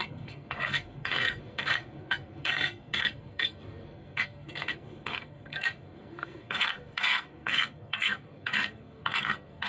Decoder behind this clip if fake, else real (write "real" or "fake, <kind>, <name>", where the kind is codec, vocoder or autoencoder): fake, codec, SNAC